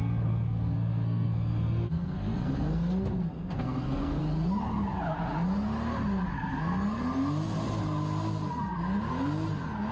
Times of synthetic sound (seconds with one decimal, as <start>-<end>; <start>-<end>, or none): 0.0-4.2; 6.3-7.0